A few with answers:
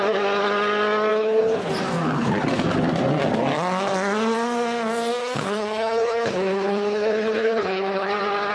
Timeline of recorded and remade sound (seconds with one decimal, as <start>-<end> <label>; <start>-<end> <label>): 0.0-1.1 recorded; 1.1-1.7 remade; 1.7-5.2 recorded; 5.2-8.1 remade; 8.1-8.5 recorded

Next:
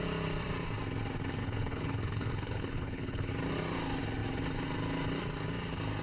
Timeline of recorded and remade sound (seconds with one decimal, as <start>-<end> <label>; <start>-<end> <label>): 0.0-1.4 recorded; 1.4-3.3 remade; 3.3-6.0 recorded

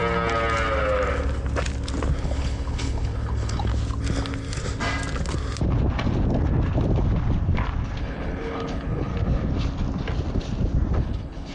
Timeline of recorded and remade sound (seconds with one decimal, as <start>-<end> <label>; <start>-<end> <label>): 0.0-2.2 recorded; 2.2-3.7 remade; 3.7-8.0 recorded; 8.0-9.1 remade; 9.1-11.0 recorded; 11.0-11.5 remade

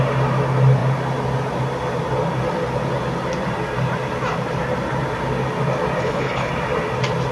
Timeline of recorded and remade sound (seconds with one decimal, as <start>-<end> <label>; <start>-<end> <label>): 0.0-6.0 recorded; 6.0-6.5 remade; 6.5-7.3 recorded

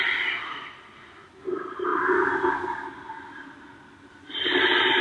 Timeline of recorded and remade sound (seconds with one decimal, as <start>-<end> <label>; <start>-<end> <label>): 0.0-5.0 recorded

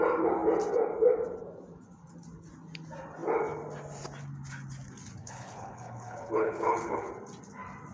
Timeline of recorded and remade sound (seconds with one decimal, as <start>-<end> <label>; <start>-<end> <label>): 0.0-5.2 recorded; 5.2-7.1 remade; 7.1-7.9 recorded

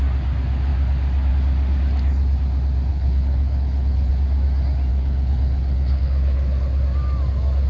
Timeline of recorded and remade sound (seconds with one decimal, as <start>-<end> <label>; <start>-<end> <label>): 0.0-2.9 recorded; 2.9-4.1 remade; 4.1-4.9 recorded; 4.9-6.8 remade; 6.8-7.7 recorded

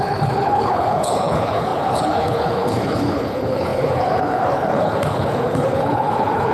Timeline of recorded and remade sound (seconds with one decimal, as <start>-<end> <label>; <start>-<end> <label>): 0.0-6.5 remade